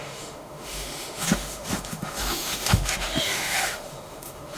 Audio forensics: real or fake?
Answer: fake